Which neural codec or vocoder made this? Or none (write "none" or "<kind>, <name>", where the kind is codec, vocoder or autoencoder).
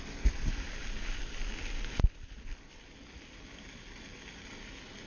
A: none